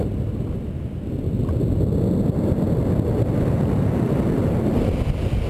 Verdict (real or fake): real